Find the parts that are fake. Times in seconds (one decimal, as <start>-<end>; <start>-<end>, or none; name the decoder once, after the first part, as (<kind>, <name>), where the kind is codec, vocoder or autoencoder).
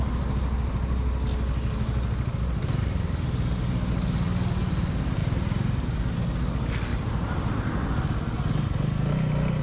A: 5.2-6.2 (vocoder, BigVGAN v2); 6.9-7.5